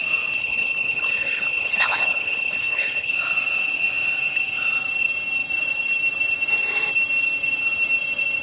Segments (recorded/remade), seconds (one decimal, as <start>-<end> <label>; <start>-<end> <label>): 0.0-0.4 recorded; 0.4-3.1 remade; 3.1-8.4 recorded